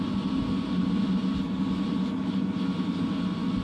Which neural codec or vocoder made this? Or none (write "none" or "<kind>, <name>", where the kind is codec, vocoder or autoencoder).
none